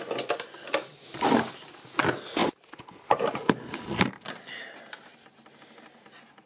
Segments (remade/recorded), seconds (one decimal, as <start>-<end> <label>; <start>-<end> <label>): 0.0-6.5 recorded